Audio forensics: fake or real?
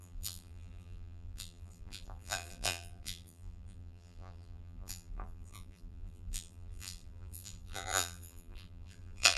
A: fake